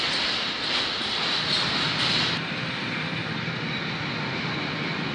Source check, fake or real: real